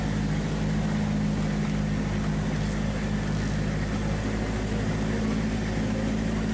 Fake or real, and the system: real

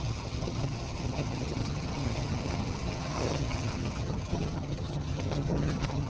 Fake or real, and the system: fake, vocoder, HiFi-GAN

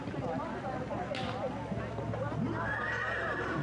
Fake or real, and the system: real